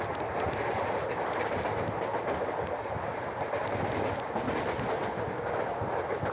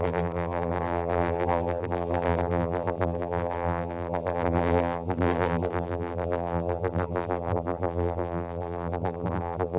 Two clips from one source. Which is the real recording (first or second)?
first